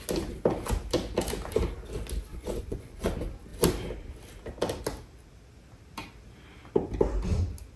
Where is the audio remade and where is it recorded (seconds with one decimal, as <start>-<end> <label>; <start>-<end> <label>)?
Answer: 0.0-2.3 recorded; 2.3-3.1 remade; 3.1-7.8 recorded